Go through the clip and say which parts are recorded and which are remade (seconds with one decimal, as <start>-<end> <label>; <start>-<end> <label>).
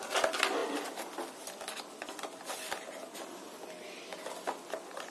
0.0-5.1 recorded